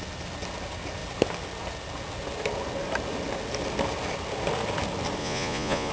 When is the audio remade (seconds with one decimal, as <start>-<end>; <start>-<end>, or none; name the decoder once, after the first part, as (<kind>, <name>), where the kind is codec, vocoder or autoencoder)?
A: 5.2-5.9 (vocoder, Vocos)